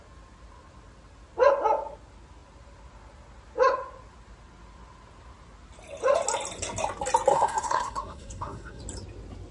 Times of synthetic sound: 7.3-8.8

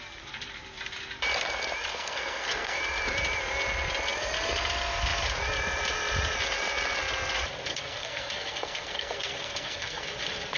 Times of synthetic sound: 1.9-2.8; 7.7-10.1

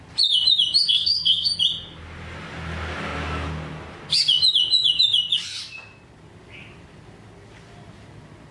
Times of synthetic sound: 0.8-1.5

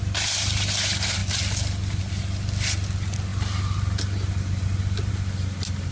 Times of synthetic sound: none

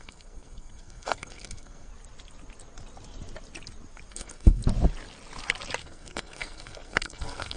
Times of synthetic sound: 0.0-1.9; 4.1-4.6; 5.8-7.6

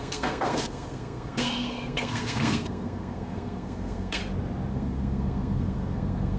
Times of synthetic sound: 0.0-4.2; 4.7-6.4